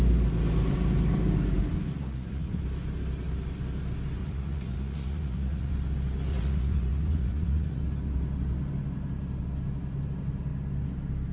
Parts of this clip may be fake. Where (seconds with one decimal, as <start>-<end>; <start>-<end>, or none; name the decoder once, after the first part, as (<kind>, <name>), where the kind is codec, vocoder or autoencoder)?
1.9-2.6 (vocoder, Vocos); 4.2-5.7; 6.3-7.8